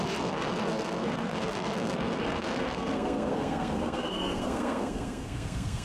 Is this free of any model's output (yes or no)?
no